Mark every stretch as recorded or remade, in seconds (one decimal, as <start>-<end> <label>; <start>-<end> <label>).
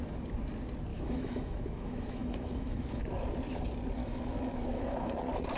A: 0.0-0.9 recorded; 0.9-3.0 remade; 3.0-4.0 recorded; 4.0-5.1 remade; 5.1-5.6 recorded